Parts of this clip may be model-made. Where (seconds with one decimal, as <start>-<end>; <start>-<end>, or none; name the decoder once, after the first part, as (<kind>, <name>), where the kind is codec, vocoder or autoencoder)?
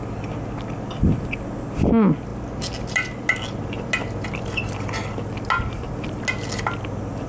none